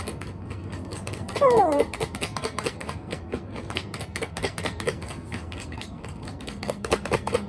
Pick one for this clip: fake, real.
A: fake